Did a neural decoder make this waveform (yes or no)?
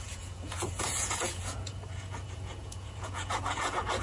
yes